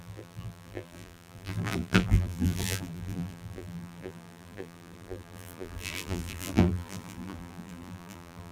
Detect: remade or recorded remade